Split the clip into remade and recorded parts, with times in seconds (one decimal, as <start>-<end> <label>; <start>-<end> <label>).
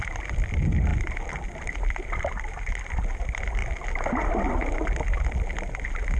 0.0-0.9 recorded; 0.9-2.8 remade; 2.8-6.2 recorded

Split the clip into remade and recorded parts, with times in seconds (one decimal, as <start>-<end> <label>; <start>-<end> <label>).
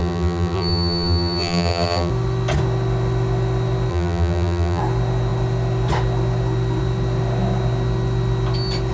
0.0-2.1 remade; 2.1-3.9 recorded; 3.9-4.8 remade; 4.8-8.9 recorded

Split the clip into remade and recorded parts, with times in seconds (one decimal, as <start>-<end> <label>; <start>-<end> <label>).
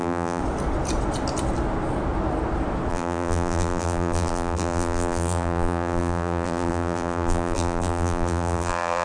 0.0-0.4 remade; 0.4-2.9 recorded; 2.9-9.0 remade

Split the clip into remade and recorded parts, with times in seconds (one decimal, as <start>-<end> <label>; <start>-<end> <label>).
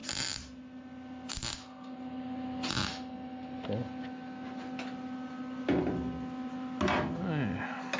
0.0-0.5 remade; 0.5-8.0 recorded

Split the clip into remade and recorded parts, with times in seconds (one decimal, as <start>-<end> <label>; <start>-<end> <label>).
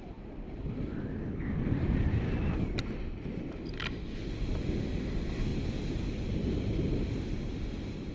0.0-5.5 remade; 5.5-8.1 recorded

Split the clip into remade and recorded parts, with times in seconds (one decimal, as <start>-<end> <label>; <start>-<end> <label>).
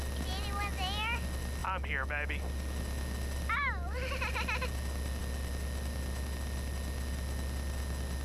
0.0-8.2 recorded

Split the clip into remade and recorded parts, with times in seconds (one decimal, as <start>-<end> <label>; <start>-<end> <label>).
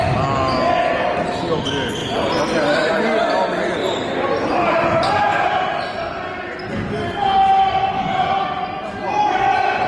0.0-2.0 recorded; 2.0-2.9 remade; 2.9-3.8 recorded; 3.8-5.1 remade; 5.1-9.9 recorded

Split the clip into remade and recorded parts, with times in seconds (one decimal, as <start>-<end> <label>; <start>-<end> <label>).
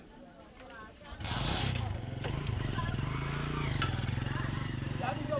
0.0-2.8 remade; 2.8-4.1 recorded; 4.1-5.4 remade